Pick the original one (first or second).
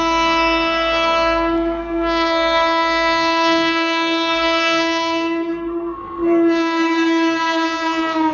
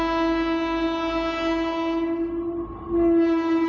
second